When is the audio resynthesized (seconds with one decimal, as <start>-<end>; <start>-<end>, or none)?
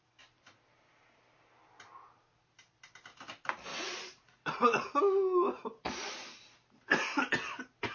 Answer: 3.7-5.0